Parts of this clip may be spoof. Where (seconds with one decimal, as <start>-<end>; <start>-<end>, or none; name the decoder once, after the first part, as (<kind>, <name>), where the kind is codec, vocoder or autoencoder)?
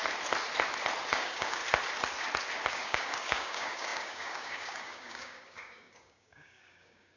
1.1-1.6 (codec, DAC); 2.7-7.2